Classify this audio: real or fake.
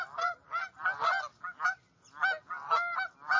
real